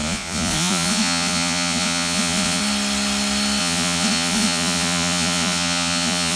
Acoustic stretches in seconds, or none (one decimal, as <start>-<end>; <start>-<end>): 2.6-3.6